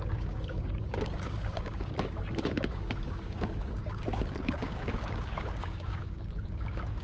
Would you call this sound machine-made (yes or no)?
yes